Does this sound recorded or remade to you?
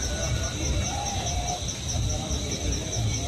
recorded